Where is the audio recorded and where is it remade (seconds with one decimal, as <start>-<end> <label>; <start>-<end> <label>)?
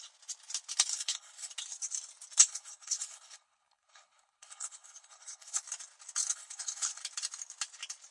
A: 0.0-0.9 recorded; 0.9-1.5 remade; 1.5-2.4 recorded; 2.4-5.6 remade; 5.6-6.2 recorded; 6.2-7.0 remade; 7.0-8.1 recorded